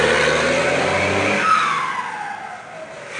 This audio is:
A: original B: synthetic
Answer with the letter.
A